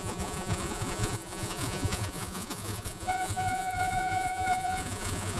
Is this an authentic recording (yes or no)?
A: no